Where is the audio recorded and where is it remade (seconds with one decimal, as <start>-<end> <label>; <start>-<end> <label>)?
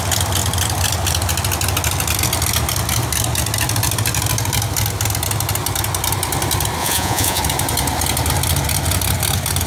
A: 0.0-6.8 recorded; 6.8-7.4 remade; 7.4-9.7 recorded